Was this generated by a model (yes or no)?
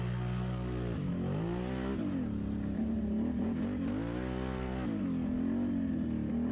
no